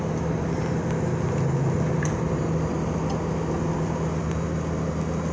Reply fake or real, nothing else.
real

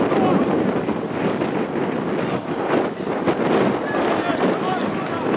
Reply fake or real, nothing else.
real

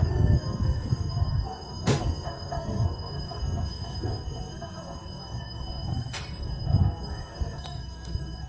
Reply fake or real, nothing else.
fake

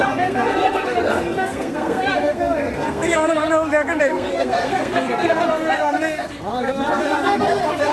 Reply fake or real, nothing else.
fake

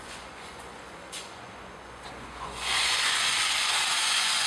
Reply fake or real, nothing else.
fake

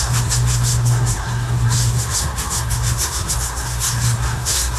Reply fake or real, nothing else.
fake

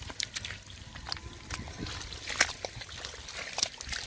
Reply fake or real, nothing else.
real